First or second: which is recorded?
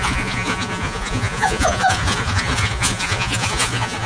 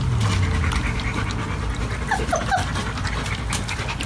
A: second